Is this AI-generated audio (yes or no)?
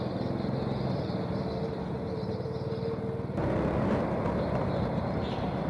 no